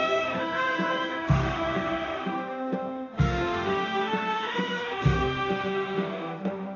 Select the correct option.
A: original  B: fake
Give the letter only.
B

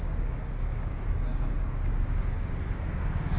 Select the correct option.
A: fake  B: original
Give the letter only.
A